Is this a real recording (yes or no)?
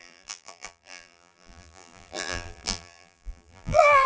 no